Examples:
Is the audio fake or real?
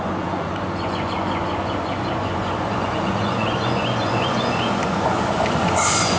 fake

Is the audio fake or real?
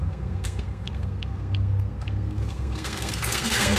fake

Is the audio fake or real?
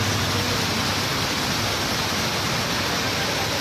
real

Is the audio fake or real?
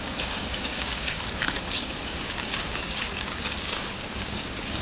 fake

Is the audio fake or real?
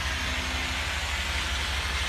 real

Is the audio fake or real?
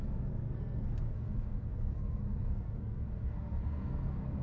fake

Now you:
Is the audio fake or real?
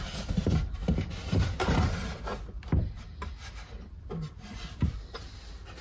real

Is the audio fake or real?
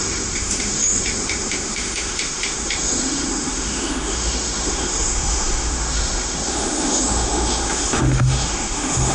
fake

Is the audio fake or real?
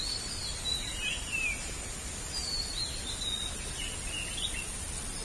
real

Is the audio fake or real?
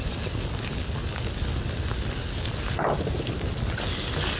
real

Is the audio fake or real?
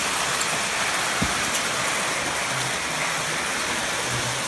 real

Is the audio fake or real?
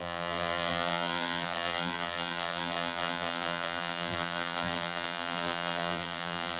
fake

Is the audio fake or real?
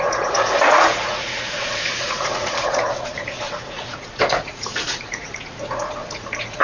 fake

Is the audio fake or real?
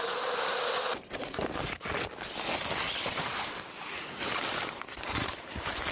real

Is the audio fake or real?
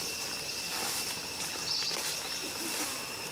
real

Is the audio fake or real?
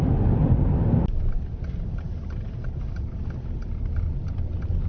real